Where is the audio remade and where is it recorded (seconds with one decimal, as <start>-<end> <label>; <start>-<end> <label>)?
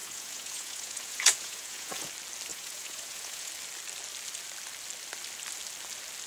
0.0-2.1 remade; 2.1-2.5 recorded; 2.5-3.5 remade; 3.5-6.3 recorded